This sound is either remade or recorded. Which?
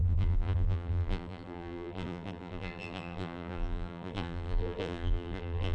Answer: remade